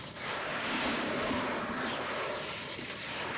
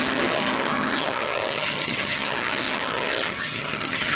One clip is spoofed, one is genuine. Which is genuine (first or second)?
first